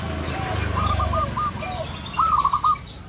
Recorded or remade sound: recorded